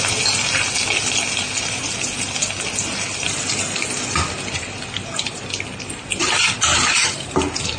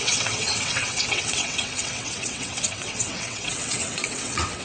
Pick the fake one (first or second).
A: second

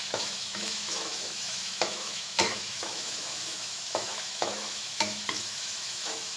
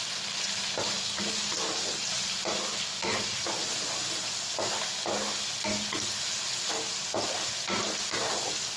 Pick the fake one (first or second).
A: first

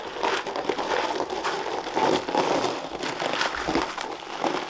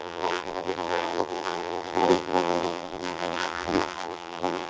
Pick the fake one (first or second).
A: second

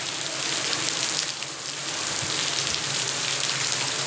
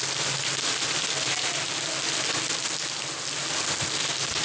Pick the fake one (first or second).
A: first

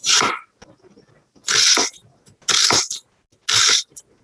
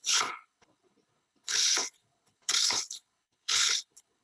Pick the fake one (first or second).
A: second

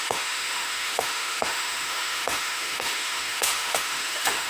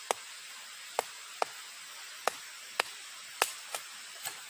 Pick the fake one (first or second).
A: first